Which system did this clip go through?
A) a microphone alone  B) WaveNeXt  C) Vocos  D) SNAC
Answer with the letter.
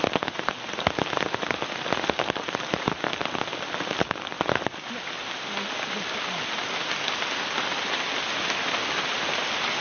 A